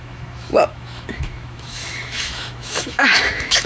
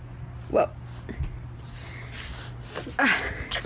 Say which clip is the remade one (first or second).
first